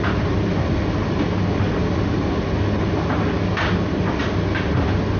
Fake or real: real